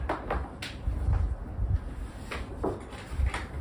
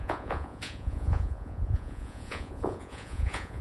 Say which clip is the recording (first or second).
first